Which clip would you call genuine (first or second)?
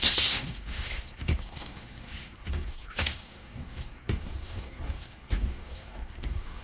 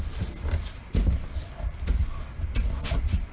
second